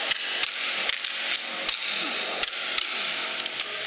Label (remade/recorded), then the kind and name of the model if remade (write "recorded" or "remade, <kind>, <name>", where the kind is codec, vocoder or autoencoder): recorded